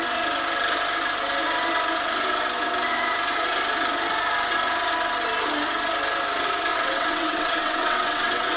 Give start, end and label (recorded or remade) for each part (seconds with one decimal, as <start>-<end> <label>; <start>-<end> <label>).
0.0-6.7 recorded; 6.7-8.6 remade